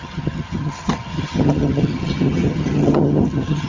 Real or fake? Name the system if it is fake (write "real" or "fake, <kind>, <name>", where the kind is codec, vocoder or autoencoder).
fake, vocoder, HiFi-GAN